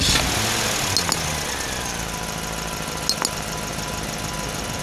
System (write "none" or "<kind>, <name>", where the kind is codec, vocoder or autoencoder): none